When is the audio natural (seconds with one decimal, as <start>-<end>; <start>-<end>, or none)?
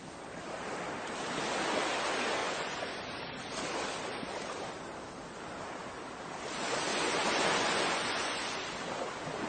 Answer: 0.0-2.4; 3.0-6.9; 8.7-9.5